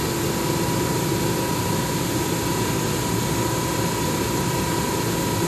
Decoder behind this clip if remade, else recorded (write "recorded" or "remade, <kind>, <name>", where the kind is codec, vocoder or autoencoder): recorded